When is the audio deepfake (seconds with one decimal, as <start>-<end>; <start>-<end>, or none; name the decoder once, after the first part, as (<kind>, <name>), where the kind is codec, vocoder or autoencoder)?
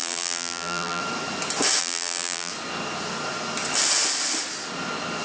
0.0-1.0 (vocoder, BigVGAN v2); 1.8-2.5